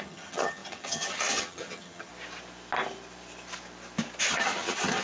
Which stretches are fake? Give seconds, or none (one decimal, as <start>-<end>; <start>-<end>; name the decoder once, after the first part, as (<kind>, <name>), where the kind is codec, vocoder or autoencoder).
0.0-2.1 (vocoder, HiFi-GAN); 4.3-5.0